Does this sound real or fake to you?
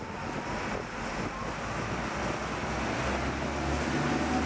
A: real